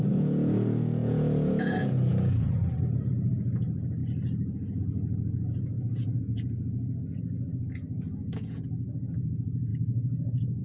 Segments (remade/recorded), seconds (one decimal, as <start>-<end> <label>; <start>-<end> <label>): 0.0-2.6 remade; 2.6-3.1 recorded; 3.1-4.0 remade; 4.0-4.8 recorded; 4.8-10.6 remade